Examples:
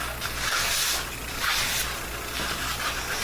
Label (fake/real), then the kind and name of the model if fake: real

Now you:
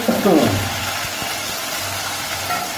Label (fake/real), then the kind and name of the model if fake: fake, vocoder, BigVGAN v2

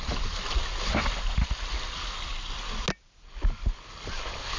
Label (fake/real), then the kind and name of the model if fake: real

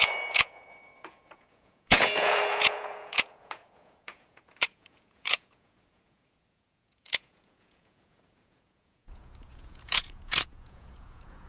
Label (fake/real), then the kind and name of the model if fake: fake, vocoder, Vocos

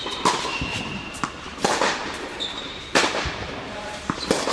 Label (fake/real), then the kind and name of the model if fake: fake, vocoder, BigVGAN v2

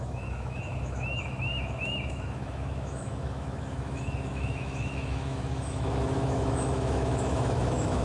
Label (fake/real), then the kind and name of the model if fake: fake, autoencoder, DAC-VAE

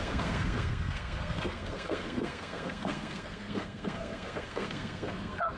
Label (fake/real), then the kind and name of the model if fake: fake, codec, SNAC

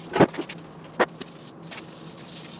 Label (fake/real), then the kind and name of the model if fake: real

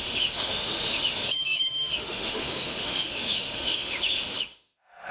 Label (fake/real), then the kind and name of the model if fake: fake, autoencoder, DAC-VAE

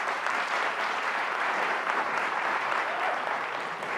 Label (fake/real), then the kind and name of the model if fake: fake, vocoder, BigVGAN v2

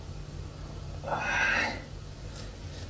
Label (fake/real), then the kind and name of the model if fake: real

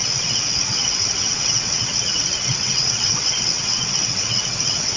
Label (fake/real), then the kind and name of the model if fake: fake, vocoder, WaveNeXt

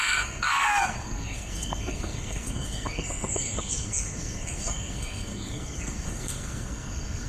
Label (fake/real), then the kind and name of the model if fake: fake, codec, SNAC